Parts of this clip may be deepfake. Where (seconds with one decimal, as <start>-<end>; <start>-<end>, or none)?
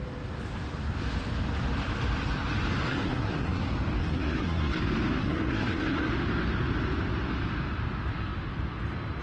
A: 2.8-3.6; 4.0-4.8; 5.2-6.1